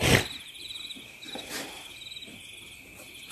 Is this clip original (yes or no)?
yes